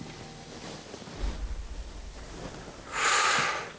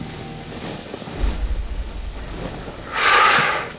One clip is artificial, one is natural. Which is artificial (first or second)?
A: second